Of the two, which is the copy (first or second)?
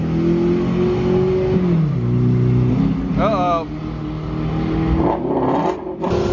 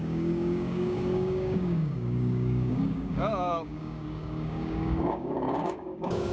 second